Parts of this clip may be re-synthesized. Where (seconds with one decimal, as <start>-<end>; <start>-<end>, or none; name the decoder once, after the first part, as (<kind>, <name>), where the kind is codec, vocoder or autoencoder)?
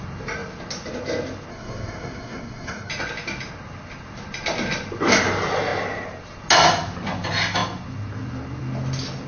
1.5-2.9 (codec, SNAC)